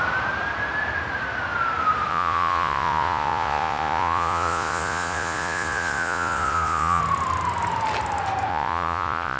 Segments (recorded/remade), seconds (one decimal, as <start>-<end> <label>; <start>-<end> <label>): 0.0-2.1 recorded; 2.1-7.0 remade; 7.0-8.5 recorded; 8.5-9.4 remade